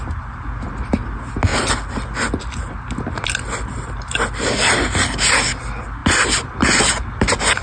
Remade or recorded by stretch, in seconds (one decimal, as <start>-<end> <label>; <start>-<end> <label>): 0.0-7.6 recorded